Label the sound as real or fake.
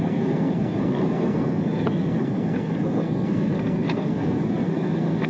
fake